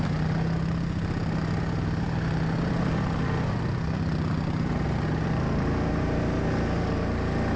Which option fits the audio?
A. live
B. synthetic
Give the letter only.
A